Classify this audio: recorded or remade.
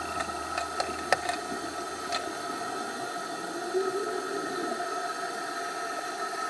recorded